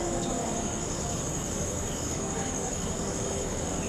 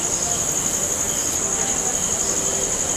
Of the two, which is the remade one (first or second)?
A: first